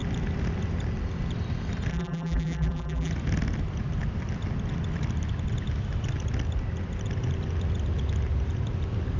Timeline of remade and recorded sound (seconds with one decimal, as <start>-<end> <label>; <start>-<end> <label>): 0.0-1.9 recorded; 1.9-3.1 remade; 3.1-9.2 recorded